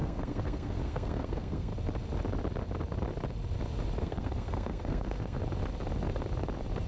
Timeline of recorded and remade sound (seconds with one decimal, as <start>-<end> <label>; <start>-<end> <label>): 0.0-1.7 remade; 1.7-4.0 recorded; 4.0-5.4 remade; 5.4-6.9 recorded